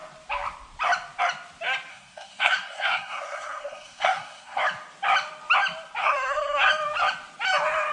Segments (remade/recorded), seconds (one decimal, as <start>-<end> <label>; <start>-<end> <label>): 0.0-1.9 recorded; 1.9-4.6 remade; 4.6-6.0 recorded; 6.0-6.7 remade; 6.7-7.9 recorded